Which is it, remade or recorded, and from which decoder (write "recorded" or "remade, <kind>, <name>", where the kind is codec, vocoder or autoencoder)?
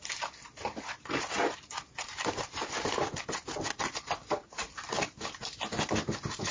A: recorded